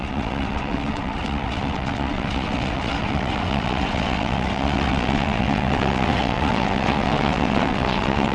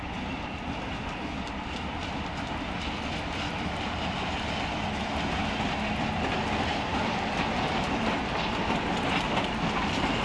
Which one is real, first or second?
second